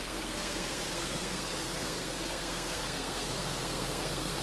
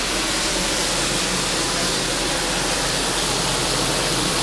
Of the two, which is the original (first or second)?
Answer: second